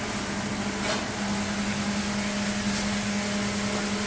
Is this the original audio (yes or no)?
yes